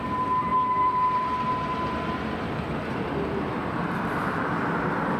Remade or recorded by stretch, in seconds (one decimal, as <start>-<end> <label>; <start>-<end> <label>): 0.0-0.5 recorded; 0.5-3.6 remade; 3.6-5.2 recorded